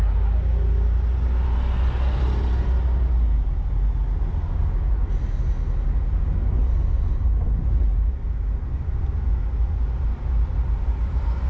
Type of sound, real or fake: real